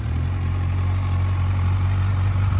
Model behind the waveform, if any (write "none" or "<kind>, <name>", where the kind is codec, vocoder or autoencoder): none